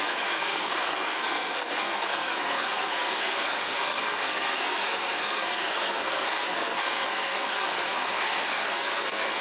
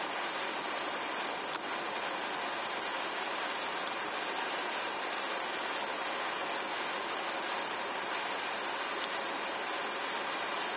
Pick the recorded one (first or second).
second